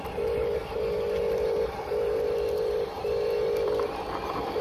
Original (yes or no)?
no